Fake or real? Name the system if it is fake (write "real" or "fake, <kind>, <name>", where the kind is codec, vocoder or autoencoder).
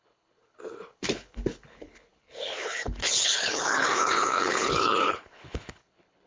fake, codec, HILCodec